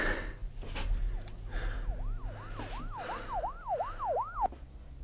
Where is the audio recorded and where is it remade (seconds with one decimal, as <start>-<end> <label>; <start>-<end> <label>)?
0.0-5.0 recorded